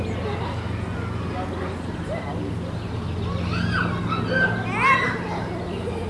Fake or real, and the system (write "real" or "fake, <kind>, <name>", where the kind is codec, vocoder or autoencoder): real